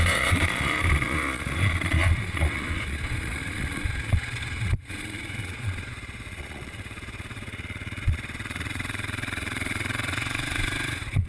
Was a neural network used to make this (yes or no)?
yes